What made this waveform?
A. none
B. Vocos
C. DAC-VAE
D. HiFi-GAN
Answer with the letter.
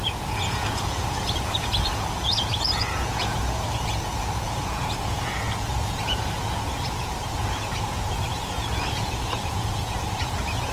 B